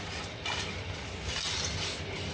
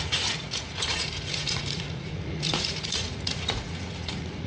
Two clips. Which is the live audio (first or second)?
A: first